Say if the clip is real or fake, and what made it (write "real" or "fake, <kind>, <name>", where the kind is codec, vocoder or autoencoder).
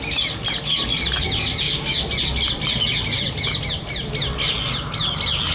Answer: real